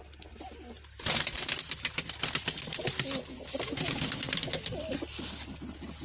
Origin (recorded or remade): recorded